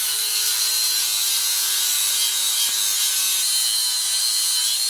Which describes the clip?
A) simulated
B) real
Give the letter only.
B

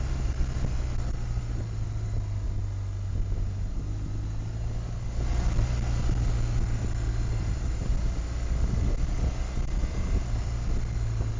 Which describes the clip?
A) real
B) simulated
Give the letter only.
A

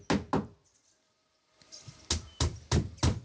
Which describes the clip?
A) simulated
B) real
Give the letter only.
B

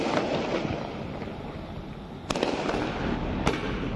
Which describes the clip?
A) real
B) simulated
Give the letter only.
A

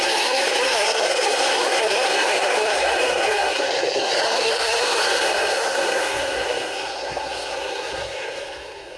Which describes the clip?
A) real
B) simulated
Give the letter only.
B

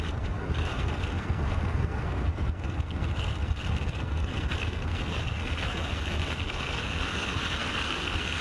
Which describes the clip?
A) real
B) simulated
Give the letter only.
B